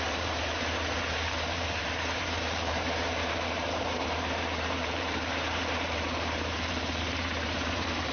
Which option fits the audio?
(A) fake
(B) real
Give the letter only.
A